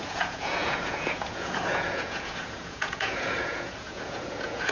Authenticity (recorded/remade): remade